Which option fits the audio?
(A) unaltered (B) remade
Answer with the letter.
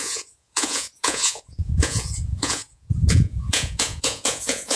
B